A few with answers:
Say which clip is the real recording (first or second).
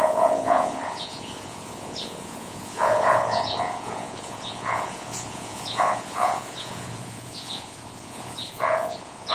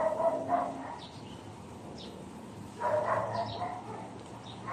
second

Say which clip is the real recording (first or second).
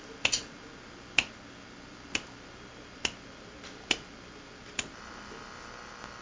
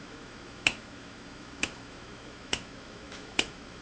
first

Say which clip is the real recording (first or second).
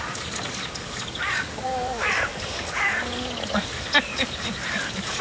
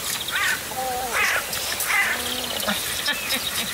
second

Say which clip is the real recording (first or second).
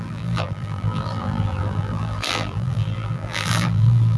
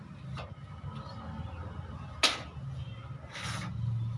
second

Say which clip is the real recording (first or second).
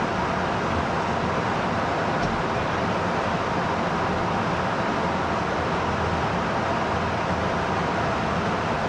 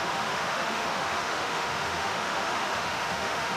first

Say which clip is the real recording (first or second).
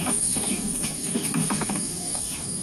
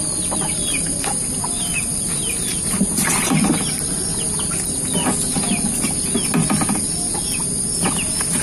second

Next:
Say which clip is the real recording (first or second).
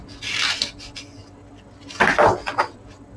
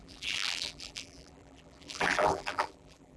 first